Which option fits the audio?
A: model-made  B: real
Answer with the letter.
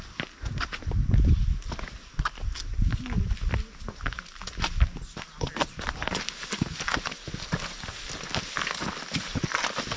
B